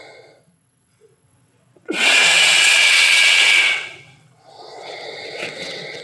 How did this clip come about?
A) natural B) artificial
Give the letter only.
B